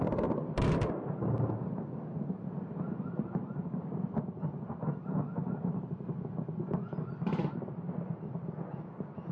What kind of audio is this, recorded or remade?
recorded